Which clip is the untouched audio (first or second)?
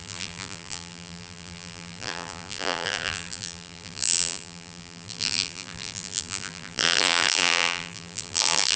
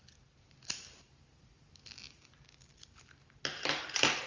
second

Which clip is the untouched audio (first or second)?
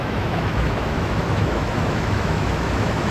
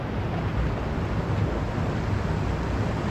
second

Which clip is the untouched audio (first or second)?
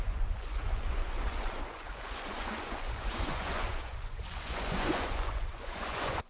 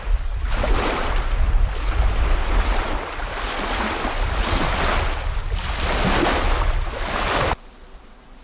second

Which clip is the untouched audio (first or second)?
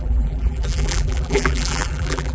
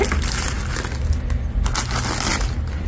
second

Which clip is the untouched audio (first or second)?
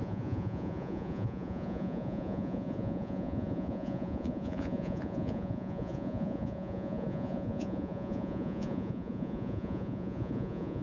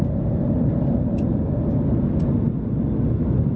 second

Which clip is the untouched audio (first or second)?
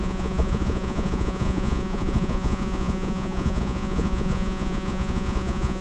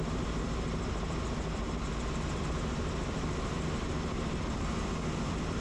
second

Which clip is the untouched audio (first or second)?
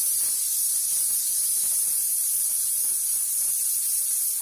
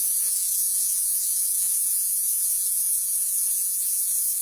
first